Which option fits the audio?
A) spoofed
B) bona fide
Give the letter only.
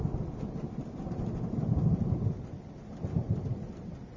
B